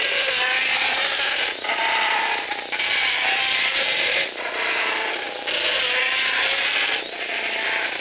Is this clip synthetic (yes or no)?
yes